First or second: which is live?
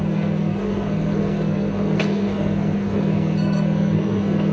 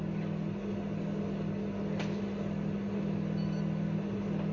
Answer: second